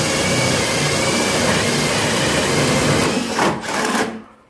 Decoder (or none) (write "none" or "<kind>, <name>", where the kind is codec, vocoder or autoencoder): none